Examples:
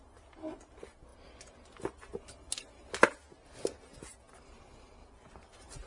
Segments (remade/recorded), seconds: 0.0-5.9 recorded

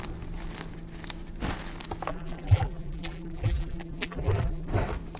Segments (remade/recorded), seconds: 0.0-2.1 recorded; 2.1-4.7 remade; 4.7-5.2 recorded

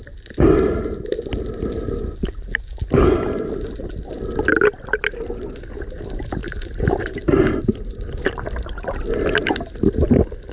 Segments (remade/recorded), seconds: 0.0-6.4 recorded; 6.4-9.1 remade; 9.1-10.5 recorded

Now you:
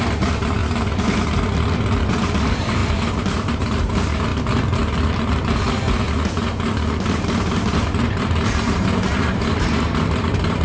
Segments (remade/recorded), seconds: 0.0-0.6 remade; 0.6-2.1 recorded; 2.1-2.8 remade; 2.8-3.5 recorded; 3.5-4.3 remade; 4.3-8.2 recorded; 8.2-10.6 remade

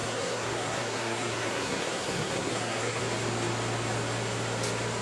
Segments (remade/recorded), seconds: 0.0-3.0 remade; 3.0-5.0 recorded

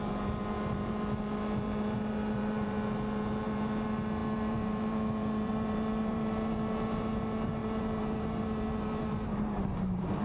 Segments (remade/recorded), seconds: 0.0-10.2 remade

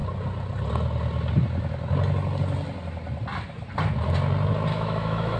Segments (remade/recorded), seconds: 0.0-4.7 recorded; 4.7-5.4 remade